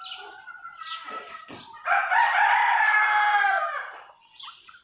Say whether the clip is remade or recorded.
recorded